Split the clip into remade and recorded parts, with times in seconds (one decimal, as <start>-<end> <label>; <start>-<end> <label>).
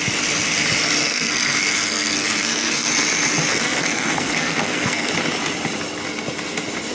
0.0-1.0 recorded; 1.0-2.9 remade; 2.9-3.5 recorded; 3.5-5.1 remade; 5.1-6.9 recorded